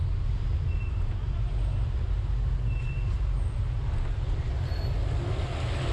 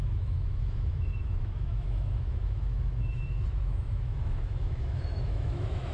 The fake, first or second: second